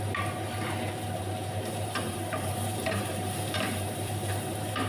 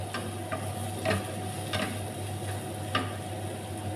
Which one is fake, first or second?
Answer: first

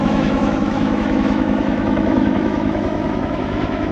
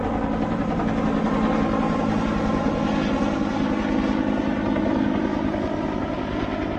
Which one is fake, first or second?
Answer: first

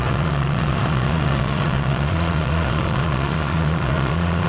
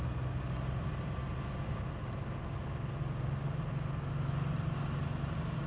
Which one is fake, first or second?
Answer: first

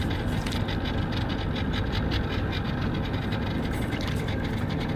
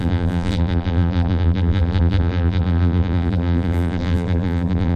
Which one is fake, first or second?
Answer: second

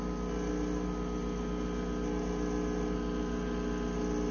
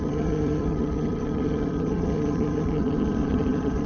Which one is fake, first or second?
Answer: second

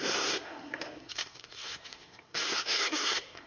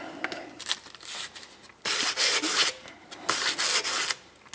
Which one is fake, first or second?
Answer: first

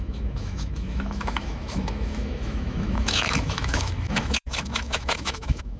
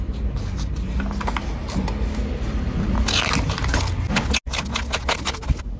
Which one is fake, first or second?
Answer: first